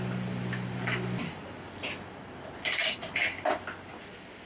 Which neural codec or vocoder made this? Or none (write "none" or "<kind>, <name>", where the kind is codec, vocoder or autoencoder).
none